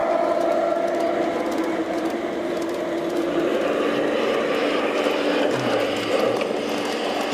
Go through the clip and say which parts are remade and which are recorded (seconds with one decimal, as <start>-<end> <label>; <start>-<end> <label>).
0.0-7.3 recorded